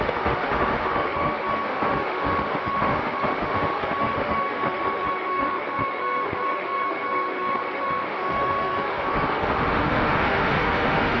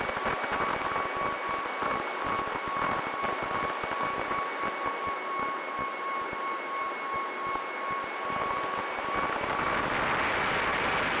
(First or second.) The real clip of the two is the second